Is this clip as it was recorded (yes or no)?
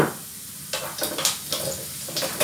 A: yes